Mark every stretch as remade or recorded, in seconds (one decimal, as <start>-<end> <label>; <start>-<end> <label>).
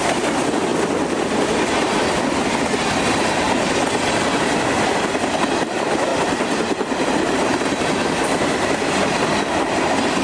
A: 0.0-6.1 recorded; 6.1-7.8 remade; 7.8-10.2 recorded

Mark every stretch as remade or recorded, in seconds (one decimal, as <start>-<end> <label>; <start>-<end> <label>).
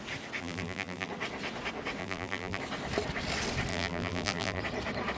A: 0.0-0.4 recorded; 0.4-1.1 remade; 1.1-2.0 recorded; 2.0-2.6 remade; 2.6-3.7 recorded; 3.7-4.6 remade; 4.6-5.2 recorded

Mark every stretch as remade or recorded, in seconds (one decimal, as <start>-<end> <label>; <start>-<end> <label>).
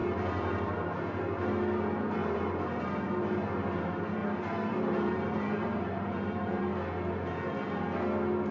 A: 0.0-1.5 remade; 1.5-2.2 recorded; 2.2-3.5 remade; 3.5-4.2 recorded; 4.2-6.6 remade; 6.6-8.5 recorded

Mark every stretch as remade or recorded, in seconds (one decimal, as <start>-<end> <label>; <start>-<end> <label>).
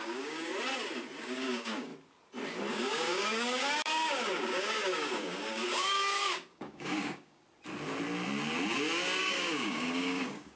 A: 0.0-0.5 remade; 0.5-1.2 recorded; 1.2-1.9 remade; 1.9-2.7 recorded; 2.7-7.4 remade; 7.4-9.2 recorded; 9.2-10.6 remade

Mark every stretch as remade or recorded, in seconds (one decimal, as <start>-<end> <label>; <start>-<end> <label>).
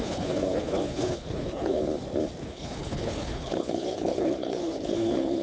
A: 0.0-1.8 remade; 1.8-2.4 recorded; 2.4-5.4 remade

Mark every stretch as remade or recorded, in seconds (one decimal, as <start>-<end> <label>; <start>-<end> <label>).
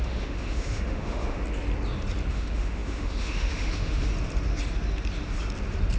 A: 0.0-1.4 remade; 1.4-2.3 recorded; 2.3-4.1 remade; 4.1-6.0 recorded